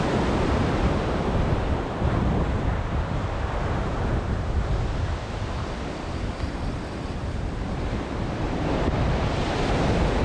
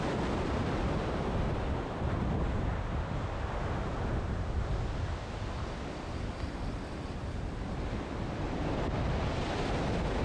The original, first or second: second